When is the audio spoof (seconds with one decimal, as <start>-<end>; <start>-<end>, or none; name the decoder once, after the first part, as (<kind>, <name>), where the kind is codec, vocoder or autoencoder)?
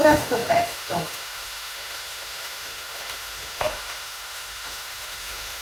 0.0-5.6 (autoencoder, DAC-VAE)